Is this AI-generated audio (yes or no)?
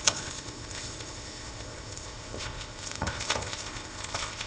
yes